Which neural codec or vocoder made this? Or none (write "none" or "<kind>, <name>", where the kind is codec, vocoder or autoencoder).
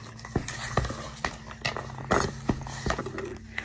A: none